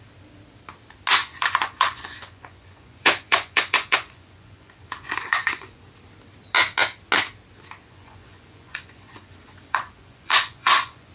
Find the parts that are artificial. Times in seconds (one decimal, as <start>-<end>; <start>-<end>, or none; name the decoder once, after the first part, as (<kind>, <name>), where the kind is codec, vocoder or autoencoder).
1.2-5.9 (vocoder, Vocos); 7.8-11.1